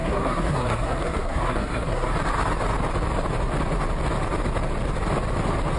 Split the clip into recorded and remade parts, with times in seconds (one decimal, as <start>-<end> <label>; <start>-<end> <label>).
0.0-2.1 remade; 2.1-5.8 recorded